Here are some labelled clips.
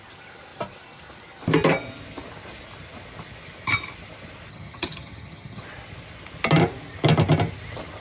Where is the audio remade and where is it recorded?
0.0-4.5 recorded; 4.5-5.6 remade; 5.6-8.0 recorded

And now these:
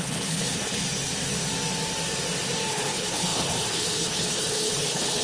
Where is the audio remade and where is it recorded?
0.0-0.8 remade; 0.8-2.7 recorded; 2.7-5.2 remade

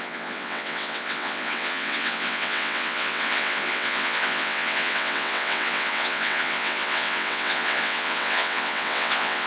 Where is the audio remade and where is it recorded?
0.0-9.5 remade

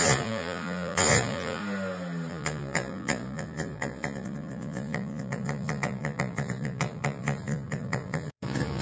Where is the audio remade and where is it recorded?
0.0-1.6 remade; 1.6-2.3 recorded; 2.3-8.8 remade

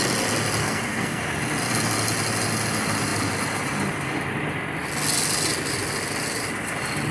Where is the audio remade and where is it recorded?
0.0-0.6 recorded; 0.6-1.2 remade; 1.2-7.1 recorded